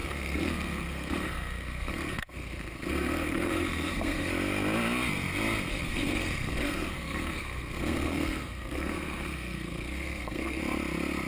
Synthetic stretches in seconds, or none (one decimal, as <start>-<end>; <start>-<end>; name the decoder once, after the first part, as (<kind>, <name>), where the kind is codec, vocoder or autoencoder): 0.0-4.3 (codec, SNAC); 5.7-10.6